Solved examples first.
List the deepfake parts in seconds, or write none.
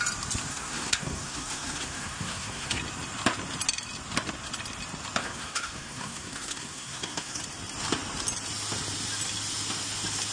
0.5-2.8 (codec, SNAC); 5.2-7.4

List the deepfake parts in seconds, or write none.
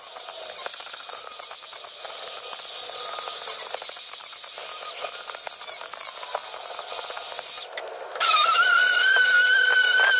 none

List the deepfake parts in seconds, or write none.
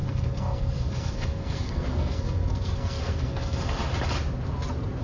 0.0-3.8 (codec, SNAC)